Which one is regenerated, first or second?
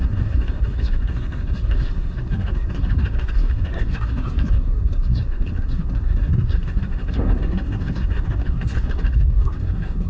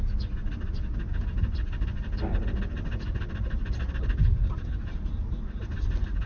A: first